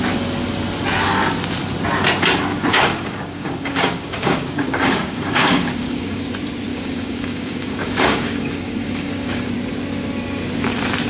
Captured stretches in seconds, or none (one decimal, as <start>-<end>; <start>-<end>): 0.0-2.7; 6.2-6.7; 9.5-11.1